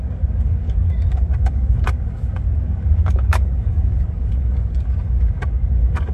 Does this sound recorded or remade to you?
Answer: remade